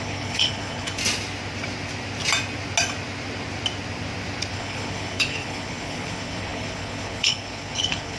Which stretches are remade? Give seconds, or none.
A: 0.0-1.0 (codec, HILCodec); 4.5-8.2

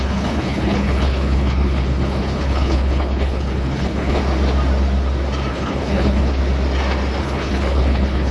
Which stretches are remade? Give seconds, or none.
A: 0.0-4.2 (codec, HILCodec); 5.5-6.4; 7.2-8.3

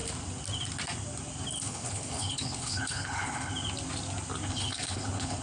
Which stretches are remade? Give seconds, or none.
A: 1.6-3.5 (codec, HILCodec); 4.5-5.4

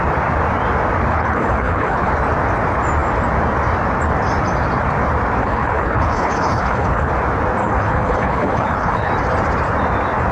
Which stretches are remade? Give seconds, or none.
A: 1.1-2.1 (codec, HILCodec); 5.4-7.1; 7.6-9.1

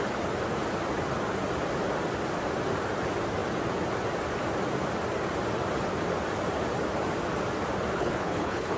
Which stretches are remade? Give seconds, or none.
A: 7.9-8.8 (codec, HILCodec)

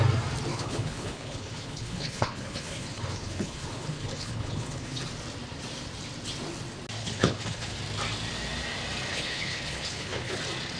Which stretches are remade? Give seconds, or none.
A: 0.5-5.0 (codec, HILCodec); 7.0-7.8; 9.1-10.4

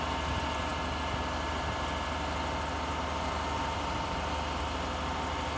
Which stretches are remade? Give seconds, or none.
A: none

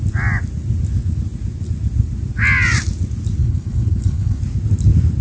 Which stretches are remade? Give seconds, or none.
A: 3.4-4.4 (codec, HILCodec)